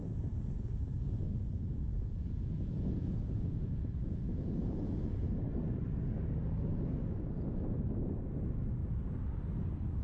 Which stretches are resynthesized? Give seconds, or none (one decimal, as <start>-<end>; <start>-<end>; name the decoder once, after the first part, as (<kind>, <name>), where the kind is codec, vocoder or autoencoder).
0.0-5.3 (vocoder, Vocos)